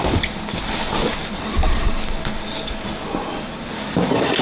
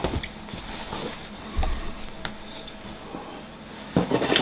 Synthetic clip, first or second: first